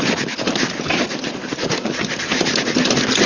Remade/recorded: recorded